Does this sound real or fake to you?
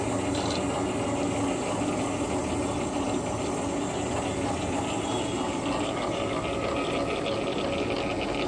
real